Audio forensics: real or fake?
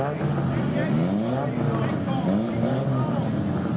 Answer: real